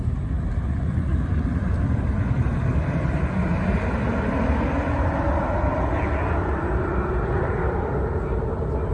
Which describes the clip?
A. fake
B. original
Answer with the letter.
B